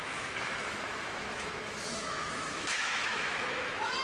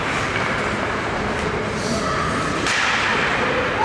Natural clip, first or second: second